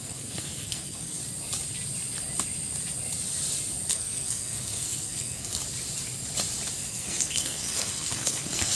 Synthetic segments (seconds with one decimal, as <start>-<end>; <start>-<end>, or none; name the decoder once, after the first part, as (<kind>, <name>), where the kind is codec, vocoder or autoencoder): 0.0-1.2 (codec, SNAC); 3.9-5.6; 6.9-8.7

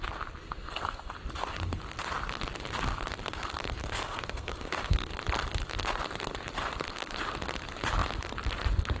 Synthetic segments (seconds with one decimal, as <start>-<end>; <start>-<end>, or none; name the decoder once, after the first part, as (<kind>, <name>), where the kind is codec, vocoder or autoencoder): 0.4-1.1 (codec, SNAC); 3.8-5.1